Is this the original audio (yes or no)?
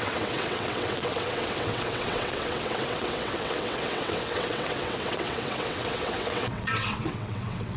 no